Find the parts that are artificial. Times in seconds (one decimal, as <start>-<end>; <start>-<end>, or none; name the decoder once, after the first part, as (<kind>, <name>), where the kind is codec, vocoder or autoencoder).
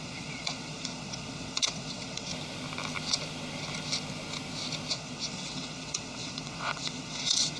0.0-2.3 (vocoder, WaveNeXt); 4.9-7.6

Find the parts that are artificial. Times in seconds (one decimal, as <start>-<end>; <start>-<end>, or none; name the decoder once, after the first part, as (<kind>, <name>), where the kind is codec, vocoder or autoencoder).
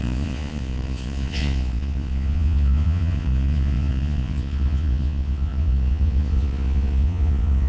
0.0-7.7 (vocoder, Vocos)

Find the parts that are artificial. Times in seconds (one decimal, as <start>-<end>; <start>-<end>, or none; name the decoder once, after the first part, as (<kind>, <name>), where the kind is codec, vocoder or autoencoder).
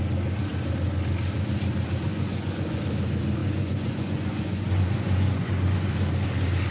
2.1-2.8 (vocoder, Vocos); 3.4-5.9